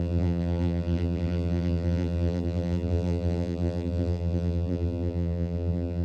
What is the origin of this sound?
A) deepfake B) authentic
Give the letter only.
A